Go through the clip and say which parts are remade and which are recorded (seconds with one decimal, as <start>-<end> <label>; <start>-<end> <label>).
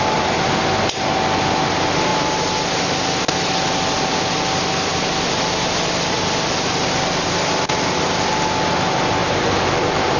0.0-10.2 recorded